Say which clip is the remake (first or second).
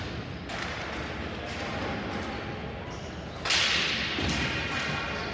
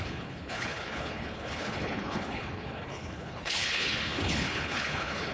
second